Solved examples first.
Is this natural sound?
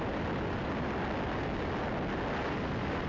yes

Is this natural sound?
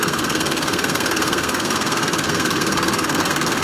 no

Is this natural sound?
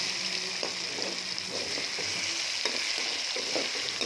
yes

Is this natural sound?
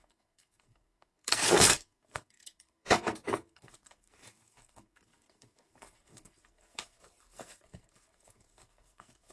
no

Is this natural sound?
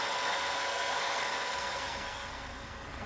no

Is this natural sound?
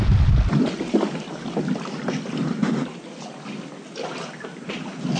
yes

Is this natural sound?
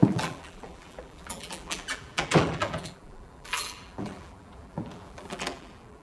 no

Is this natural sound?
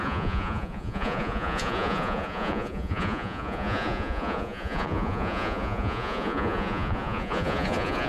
no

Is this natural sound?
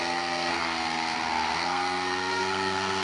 no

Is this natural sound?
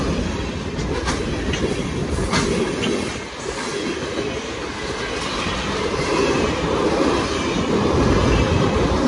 yes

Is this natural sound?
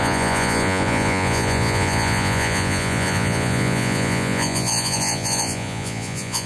no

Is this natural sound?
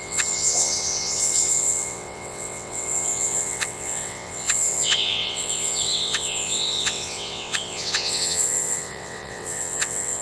no